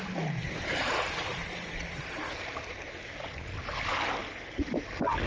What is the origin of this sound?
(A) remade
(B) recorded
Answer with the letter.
B